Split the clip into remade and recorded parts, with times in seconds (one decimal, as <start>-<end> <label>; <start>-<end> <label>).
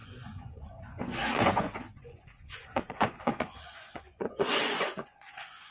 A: 0.0-5.7 remade